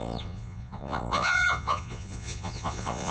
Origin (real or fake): fake